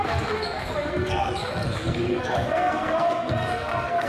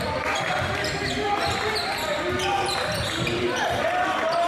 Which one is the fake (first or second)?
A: first